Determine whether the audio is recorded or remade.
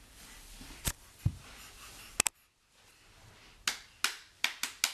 recorded